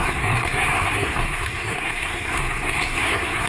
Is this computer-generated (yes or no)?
yes